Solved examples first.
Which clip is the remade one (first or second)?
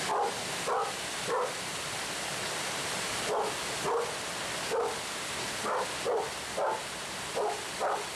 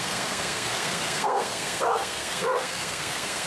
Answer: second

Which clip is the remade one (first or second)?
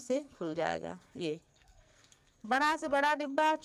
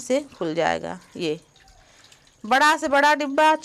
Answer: first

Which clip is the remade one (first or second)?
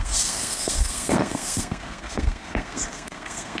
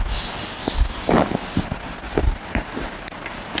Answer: first